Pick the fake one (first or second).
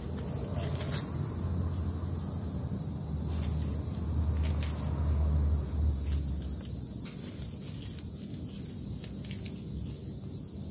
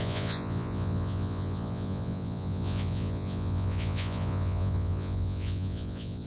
second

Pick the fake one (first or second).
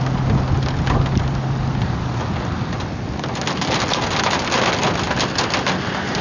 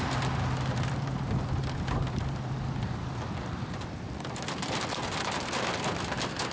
second